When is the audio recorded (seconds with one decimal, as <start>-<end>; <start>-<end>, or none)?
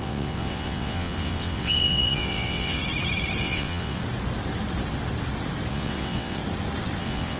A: 2.8-3.4; 4.0-5.7; 6.4-7.0